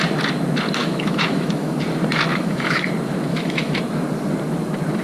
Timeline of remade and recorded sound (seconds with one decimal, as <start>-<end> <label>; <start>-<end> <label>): 0.0-0.8 recorded; 0.8-1.8 remade; 1.8-2.3 recorded; 2.3-2.9 remade; 2.9-3.3 recorded; 3.3-3.8 remade; 3.8-5.0 recorded

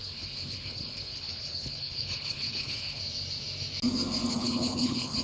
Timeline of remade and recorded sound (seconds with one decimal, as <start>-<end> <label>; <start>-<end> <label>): 0.0-3.0 remade; 3.0-4.3 recorded; 4.3-5.2 remade

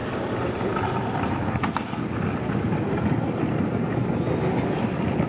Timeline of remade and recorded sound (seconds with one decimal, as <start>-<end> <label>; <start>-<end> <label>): 0.0-1.5 recorded; 1.5-2.0 remade; 2.0-5.3 recorded